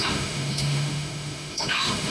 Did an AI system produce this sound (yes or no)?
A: yes